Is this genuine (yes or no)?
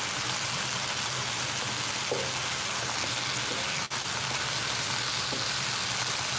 yes